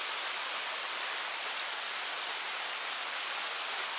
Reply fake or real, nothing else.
fake